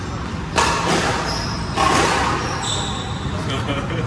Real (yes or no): yes